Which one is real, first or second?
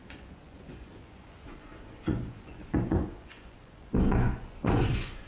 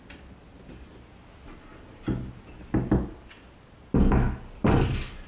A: second